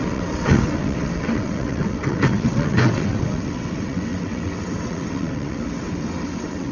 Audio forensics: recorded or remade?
remade